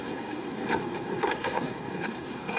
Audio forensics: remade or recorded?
remade